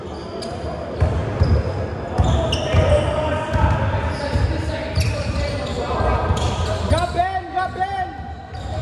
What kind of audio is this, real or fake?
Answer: real